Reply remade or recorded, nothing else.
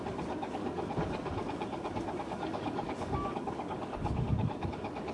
remade